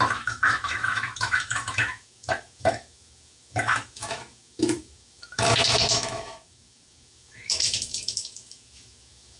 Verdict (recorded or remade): remade